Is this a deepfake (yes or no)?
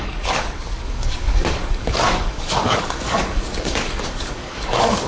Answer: yes